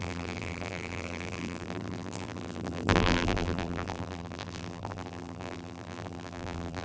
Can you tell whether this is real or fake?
fake